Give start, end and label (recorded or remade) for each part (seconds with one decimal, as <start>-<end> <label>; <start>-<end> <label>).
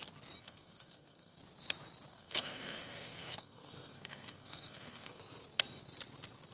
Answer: 0.0-0.4 recorded; 0.4-1.4 remade; 1.4-2.1 recorded; 2.1-5.2 remade; 5.2-6.5 recorded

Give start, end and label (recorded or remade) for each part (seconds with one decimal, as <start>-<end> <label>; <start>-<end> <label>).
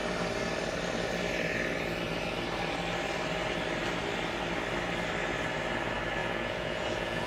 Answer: 0.0-6.2 recorded; 6.2-7.3 remade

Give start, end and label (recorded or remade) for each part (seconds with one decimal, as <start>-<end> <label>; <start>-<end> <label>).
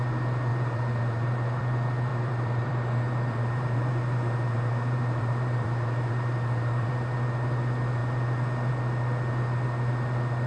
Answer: 0.0-0.5 recorded; 0.5-1.6 remade; 1.6-2.1 recorded; 2.1-6.9 remade; 6.9-10.5 recorded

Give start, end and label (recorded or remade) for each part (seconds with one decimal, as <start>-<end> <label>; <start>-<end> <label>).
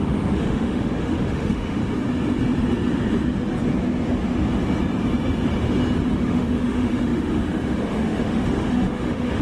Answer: 0.0-1.8 remade; 1.8-6.1 recorded; 6.1-9.4 remade